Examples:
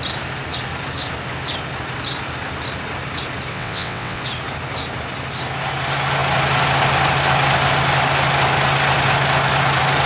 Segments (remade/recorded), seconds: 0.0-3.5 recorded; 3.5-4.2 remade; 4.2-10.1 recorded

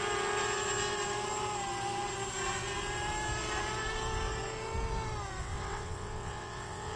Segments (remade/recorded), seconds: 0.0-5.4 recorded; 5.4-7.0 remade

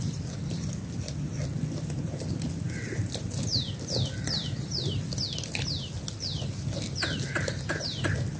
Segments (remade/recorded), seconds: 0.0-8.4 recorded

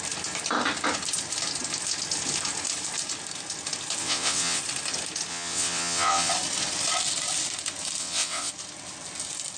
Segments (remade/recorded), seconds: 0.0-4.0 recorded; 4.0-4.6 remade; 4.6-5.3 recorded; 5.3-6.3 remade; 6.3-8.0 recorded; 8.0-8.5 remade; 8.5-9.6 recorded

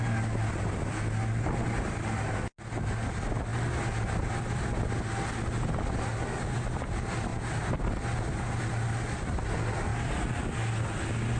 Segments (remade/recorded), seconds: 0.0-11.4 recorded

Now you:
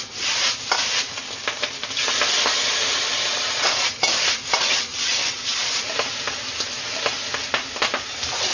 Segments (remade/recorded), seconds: 0.0-4.9 recorded; 4.9-5.6 remade; 5.6-8.5 recorded

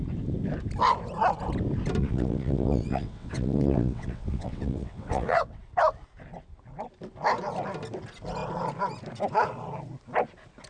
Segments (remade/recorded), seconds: 0.0-2.0 recorded; 2.0-5.6 remade; 5.6-10.7 recorded

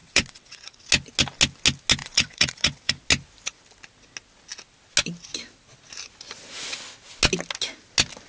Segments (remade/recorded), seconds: 0.0-0.9 remade; 0.9-2.0 recorded; 2.0-2.9 remade; 2.9-8.3 recorded